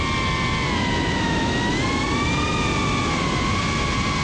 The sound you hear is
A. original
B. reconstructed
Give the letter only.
A